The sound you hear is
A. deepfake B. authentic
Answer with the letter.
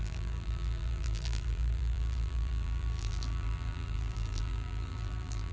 A